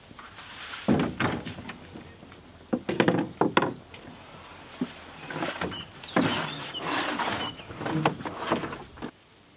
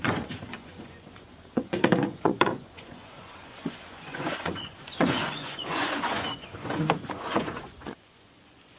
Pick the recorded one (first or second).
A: first